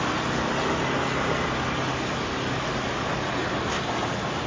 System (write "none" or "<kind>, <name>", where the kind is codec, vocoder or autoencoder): none